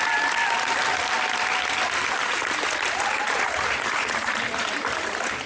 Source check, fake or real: real